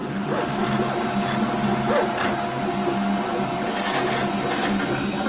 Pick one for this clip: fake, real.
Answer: real